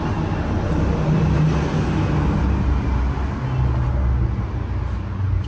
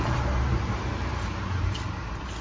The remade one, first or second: second